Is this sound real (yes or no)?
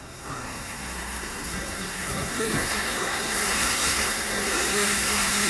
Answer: no